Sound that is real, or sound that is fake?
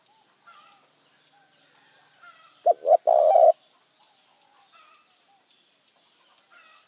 real